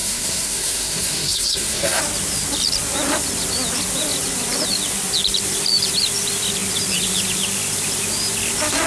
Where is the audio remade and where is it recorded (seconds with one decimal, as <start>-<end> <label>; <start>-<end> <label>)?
0.0-2.0 remade; 2.0-8.9 recorded